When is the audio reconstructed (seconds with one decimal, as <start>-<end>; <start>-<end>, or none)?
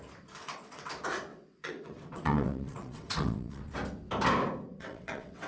0.4-0.9; 1.3-3.7; 4.7-5.5